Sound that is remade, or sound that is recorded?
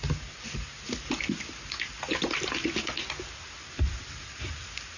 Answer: recorded